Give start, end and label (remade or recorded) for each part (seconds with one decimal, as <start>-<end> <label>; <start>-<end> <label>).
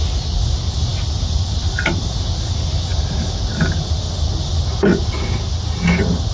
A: 0.0-0.9 recorded; 0.9-2.1 remade; 2.1-6.3 recorded